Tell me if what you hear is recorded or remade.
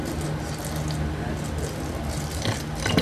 recorded